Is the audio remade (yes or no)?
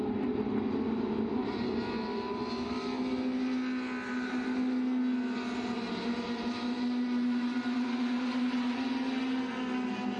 no